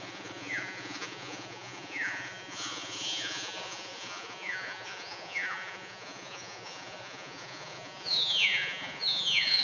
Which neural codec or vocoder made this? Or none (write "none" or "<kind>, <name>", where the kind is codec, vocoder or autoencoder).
vocoder, Vocos